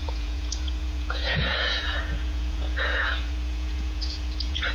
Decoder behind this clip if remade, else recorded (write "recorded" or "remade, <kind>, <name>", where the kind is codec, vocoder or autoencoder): remade, vocoder, Vocos